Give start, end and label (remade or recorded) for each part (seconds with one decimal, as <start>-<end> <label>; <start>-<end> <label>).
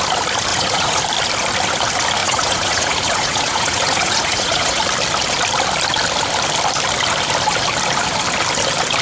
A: 0.0-0.5 recorded; 0.5-1.0 remade; 1.0-2.2 recorded; 2.2-4.8 remade; 4.8-9.0 recorded